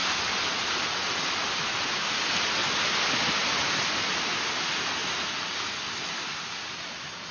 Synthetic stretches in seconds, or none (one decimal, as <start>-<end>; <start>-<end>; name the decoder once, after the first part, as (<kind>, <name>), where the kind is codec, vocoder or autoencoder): 0.0-0.9 (vocoder, BigVGAN v2)